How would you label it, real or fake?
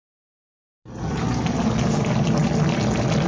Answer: real